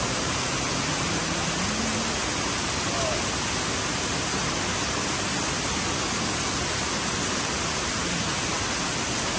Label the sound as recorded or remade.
recorded